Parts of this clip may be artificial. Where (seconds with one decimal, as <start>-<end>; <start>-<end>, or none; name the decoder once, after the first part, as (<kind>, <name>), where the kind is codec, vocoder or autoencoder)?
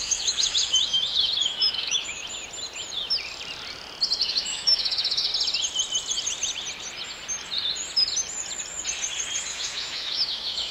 0.0-2.2 (autoencoder, DAC-VAE); 4.3-5.3; 9.5-10.7